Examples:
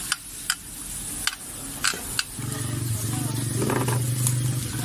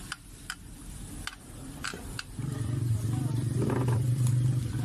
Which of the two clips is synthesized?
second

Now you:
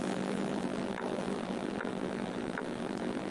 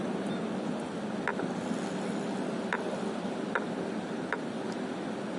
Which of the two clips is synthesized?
first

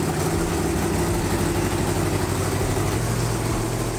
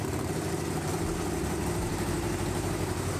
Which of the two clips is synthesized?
second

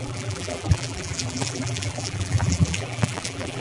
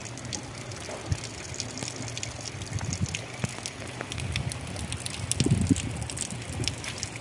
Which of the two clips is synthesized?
first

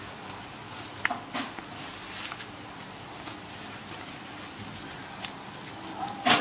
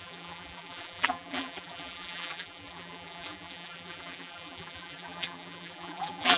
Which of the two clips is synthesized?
second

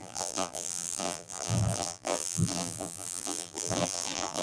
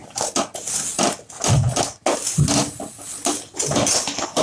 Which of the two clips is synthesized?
first